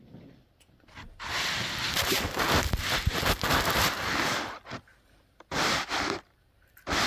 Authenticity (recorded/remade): remade